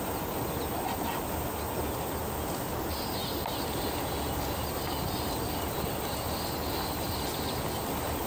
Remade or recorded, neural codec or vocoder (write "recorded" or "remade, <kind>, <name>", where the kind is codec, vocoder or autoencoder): recorded